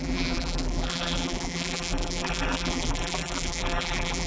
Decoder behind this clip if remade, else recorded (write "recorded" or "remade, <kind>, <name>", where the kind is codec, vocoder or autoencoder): remade, vocoder, BigVGAN v2